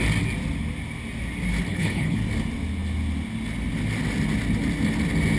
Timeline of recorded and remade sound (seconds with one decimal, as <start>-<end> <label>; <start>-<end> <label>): 0.0-1.7 recorded; 1.7-2.2 remade; 2.2-5.4 recorded